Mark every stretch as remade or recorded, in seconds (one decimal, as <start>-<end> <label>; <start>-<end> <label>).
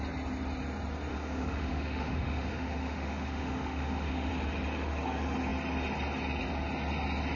0.0-1.1 recorded; 1.1-4.3 remade; 4.3-7.4 recorded